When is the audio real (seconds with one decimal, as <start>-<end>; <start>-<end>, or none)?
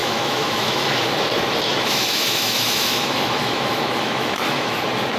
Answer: 1.0-1.7; 4.8-5.2